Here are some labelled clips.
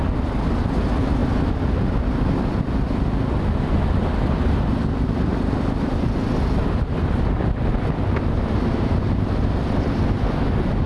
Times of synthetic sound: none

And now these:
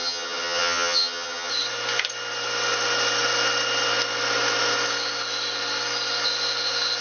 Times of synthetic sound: 0.0-1.5 (vocoder, HiFi-GAN)

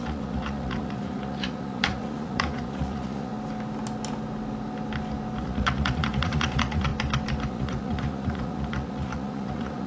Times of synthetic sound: 0.0-3.3 (vocoder, Vocos); 5.4-6.9; 7.5-9.9

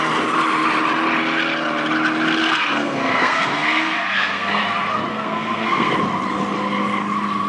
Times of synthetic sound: 2.4-4.6 (codec, SNAC); 5.1-5.9

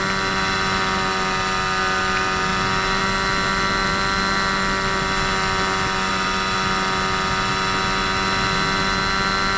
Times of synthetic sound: none

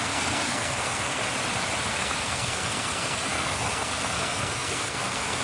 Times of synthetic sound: 0.0-1.2 (codec, SNAC); 1.9-5.4